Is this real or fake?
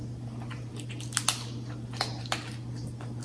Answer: real